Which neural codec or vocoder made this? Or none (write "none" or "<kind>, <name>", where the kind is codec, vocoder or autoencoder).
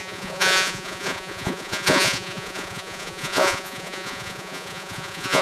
vocoder, Vocos